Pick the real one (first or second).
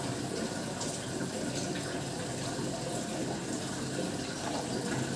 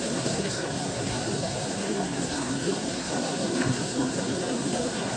first